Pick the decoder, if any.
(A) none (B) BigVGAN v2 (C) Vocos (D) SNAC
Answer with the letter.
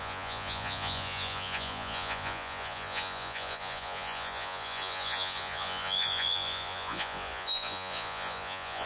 C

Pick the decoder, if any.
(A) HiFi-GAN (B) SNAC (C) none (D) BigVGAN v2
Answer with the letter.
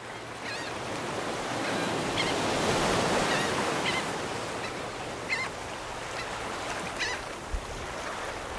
C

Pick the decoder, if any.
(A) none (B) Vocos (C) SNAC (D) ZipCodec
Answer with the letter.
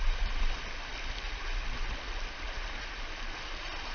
A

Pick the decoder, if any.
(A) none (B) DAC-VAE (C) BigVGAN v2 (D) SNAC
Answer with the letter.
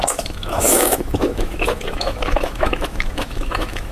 B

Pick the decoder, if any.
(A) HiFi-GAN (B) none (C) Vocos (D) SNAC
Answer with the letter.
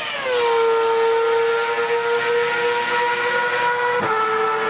B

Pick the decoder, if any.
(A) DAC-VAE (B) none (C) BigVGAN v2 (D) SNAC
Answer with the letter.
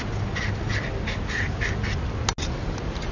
B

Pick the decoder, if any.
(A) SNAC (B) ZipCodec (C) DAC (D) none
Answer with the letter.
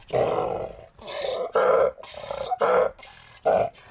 D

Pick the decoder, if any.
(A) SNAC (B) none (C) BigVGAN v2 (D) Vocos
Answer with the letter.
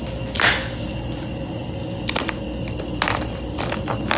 B